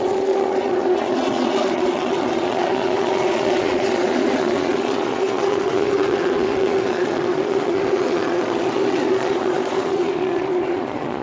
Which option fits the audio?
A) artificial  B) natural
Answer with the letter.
A